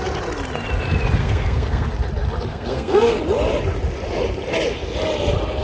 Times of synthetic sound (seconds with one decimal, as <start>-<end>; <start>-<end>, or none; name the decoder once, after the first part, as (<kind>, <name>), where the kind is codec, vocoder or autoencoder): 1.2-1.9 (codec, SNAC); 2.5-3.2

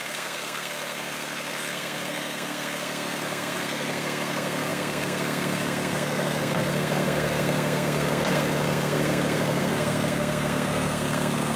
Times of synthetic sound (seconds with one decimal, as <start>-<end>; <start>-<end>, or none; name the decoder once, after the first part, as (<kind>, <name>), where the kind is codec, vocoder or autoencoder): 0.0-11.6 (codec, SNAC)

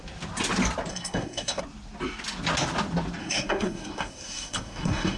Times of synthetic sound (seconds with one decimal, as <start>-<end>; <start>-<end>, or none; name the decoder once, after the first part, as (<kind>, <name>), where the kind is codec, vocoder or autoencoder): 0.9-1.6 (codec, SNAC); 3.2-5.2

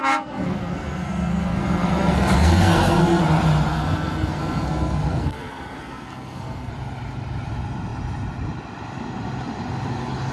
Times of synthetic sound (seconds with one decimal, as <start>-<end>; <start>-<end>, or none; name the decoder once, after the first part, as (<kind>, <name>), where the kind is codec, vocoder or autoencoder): 0.0-3.2 (codec, SNAC); 3.7-6.7